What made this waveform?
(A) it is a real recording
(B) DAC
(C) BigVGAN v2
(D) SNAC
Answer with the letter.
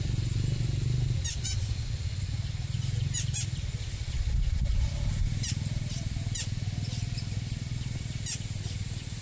A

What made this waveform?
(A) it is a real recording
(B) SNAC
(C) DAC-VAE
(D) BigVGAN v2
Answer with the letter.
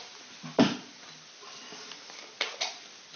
A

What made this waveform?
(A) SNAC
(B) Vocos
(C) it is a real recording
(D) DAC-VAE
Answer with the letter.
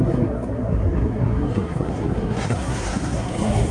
A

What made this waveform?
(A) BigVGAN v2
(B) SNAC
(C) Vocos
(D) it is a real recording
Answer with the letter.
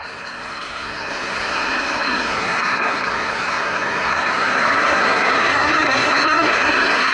B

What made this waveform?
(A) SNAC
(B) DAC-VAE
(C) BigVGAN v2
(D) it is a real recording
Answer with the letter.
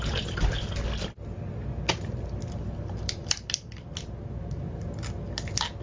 D